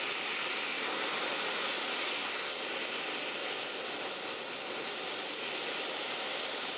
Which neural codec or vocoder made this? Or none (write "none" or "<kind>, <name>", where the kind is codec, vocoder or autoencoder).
none